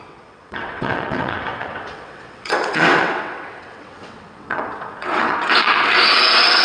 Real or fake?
fake